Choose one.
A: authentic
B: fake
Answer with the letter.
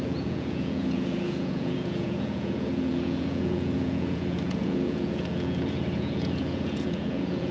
B